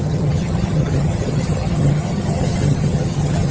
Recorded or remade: remade